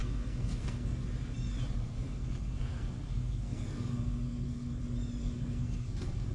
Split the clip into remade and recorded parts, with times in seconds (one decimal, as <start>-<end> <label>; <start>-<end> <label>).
0.0-1.0 remade; 1.0-1.8 recorded; 1.8-4.8 remade; 4.8-5.2 recorded; 5.2-6.3 remade